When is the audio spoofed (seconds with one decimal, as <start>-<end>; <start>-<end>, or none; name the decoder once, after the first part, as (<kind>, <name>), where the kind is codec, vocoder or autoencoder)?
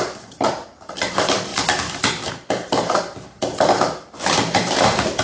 0.0-1.5 (vocoder, BigVGAN v2); 2.3-5.2